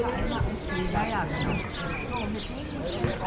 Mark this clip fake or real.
real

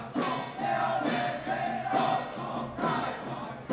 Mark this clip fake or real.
real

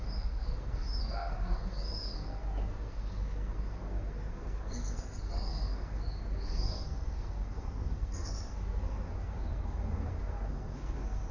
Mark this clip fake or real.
fake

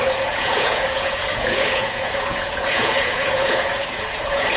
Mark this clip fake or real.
fake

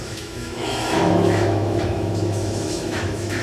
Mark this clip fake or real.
fake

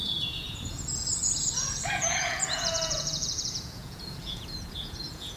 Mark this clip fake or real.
fake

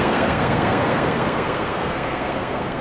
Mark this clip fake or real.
fake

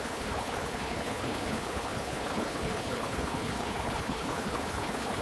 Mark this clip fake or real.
fake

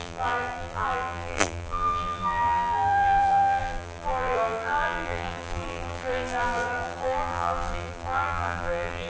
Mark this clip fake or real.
fake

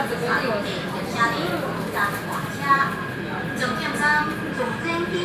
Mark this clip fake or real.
real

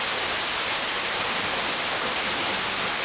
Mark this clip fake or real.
real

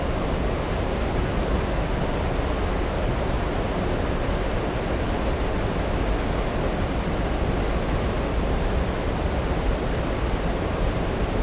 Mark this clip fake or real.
real